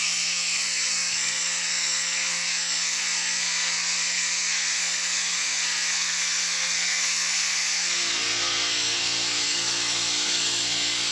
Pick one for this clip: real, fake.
fake